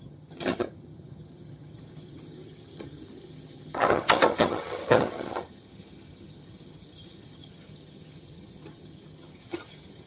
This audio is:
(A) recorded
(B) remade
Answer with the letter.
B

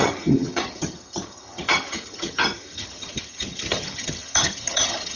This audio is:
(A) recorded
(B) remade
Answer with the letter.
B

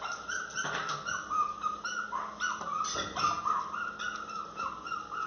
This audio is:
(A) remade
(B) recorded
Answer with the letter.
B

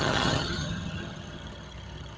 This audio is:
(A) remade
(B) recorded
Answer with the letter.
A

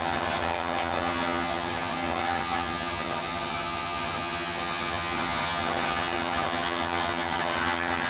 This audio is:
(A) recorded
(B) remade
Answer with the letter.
B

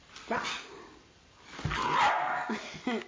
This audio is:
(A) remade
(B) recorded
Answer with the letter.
B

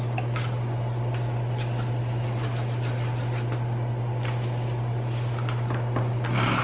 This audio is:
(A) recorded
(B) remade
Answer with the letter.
A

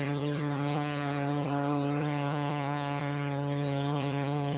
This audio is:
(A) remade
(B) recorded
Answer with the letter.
A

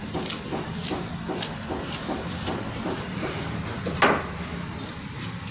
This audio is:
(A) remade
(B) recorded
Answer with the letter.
B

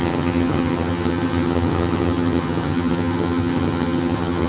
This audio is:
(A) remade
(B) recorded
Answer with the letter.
A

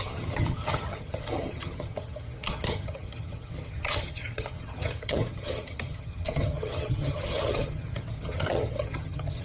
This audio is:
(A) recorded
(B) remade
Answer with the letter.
B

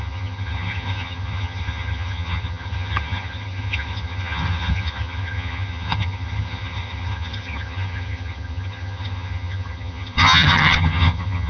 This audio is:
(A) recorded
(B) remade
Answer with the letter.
B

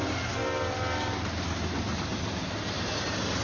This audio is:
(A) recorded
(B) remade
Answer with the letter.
A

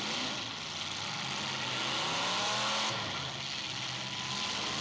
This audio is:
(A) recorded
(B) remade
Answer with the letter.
A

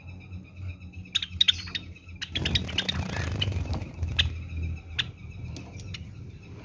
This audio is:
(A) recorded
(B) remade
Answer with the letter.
A